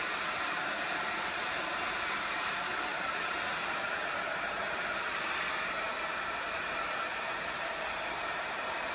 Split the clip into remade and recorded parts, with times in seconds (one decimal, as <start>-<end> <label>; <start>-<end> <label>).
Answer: 0.0-8.9 remade